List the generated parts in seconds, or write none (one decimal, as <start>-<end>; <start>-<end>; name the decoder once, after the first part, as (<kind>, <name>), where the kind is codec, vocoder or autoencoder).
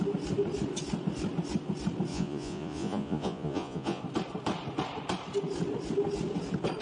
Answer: 2.1-4.0 (vocoder, Vocos)